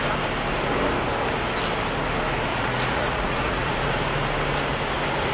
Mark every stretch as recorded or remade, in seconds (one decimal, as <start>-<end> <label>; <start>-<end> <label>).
0.0-2.5 recorded; 2.5-3.9 remade; 3.9-5.3 recorded